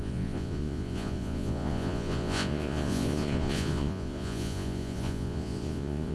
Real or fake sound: fake